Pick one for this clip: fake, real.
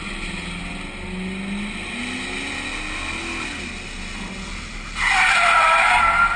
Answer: real